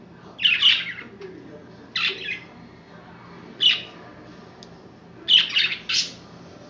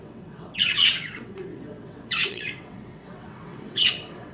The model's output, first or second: second